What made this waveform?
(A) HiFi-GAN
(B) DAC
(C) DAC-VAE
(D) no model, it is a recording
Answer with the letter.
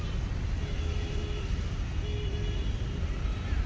D